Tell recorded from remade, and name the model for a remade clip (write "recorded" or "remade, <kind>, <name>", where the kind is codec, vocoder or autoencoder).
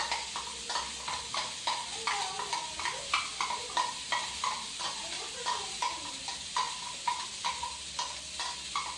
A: recorded